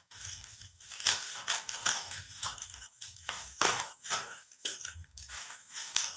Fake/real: fake